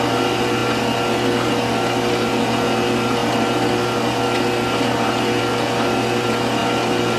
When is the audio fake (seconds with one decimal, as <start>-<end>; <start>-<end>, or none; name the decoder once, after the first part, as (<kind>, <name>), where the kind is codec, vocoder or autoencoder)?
none